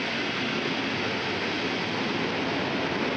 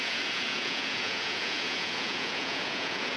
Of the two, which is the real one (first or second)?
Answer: first